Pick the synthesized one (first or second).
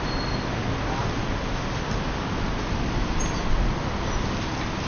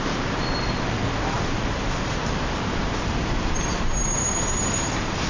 second